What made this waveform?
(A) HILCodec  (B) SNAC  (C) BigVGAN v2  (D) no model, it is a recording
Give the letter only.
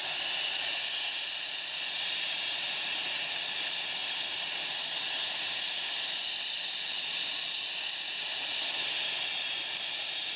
D